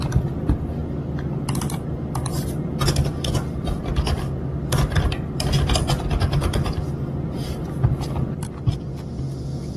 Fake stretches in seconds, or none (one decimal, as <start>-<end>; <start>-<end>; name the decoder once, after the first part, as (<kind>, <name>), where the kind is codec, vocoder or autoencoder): none